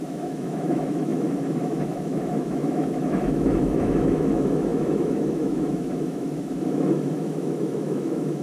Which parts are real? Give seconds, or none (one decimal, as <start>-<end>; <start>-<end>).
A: none